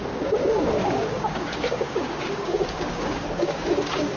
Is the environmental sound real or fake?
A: fake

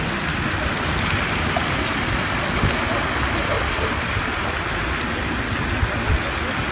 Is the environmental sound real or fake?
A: real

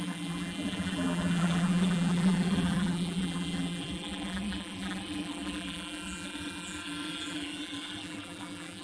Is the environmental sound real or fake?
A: fake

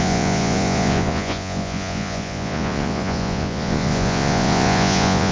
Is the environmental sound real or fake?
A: fake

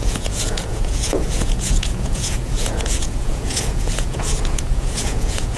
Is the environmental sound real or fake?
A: fake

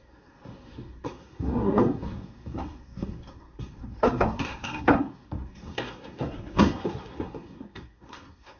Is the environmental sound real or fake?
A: fake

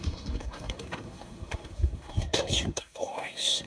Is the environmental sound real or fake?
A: fake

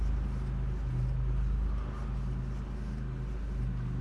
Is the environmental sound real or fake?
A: real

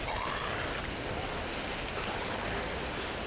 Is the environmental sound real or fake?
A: real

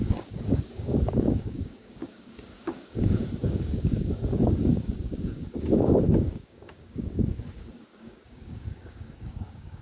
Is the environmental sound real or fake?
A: fake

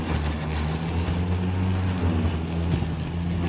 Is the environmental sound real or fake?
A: real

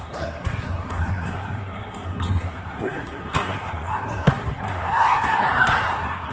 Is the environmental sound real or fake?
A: fake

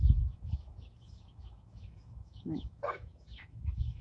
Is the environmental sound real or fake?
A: fake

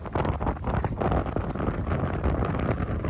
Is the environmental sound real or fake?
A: real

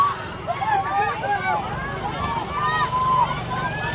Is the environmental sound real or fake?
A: real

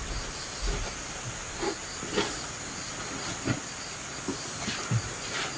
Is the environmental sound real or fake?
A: real